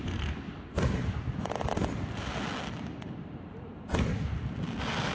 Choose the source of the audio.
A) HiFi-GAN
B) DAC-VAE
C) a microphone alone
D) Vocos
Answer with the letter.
C